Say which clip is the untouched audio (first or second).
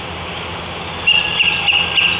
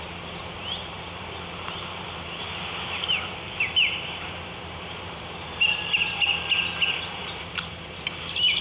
first